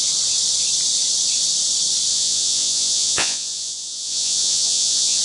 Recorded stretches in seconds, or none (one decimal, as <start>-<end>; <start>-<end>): 0.0-2.1